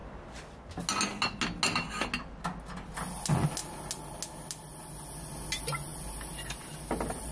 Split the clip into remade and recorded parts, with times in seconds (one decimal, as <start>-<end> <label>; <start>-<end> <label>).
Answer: 0.0-7.3 recorded